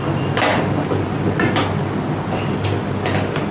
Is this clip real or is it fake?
real